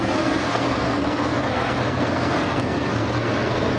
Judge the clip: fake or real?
fake